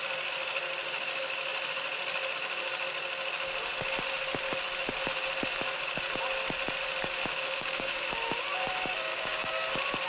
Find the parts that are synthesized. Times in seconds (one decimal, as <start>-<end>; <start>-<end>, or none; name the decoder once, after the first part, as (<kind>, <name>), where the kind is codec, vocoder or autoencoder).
7.2-8.0 (codec, DAC); 9.1-9.7